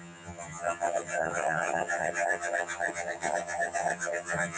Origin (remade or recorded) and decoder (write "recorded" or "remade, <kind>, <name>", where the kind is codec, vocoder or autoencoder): remade, vocoder, HiFi-GAN